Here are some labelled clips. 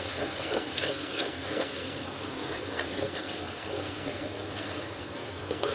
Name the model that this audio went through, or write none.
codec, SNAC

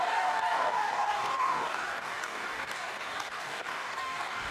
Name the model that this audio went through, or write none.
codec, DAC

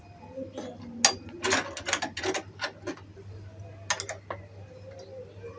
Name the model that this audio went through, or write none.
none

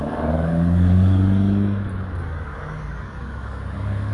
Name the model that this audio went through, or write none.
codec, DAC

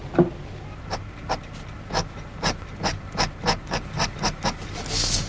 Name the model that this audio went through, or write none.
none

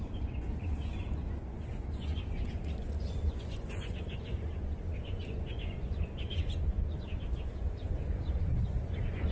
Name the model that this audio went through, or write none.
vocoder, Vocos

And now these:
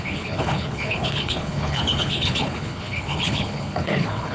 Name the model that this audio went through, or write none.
codec, HILCodec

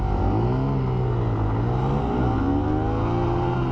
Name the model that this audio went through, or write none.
none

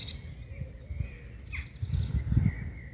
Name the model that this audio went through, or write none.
none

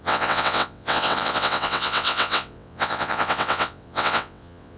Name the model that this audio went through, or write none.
vocoder, WaveNeXt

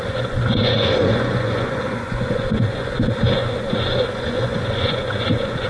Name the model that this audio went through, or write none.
vocoder, Vocos